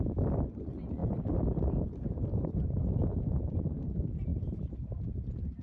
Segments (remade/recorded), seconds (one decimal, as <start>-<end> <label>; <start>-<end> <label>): 0.0-1.0 remade; 1.0-3.8 recorded; 3.8-4.3 remade; 4.3-5.6 recorded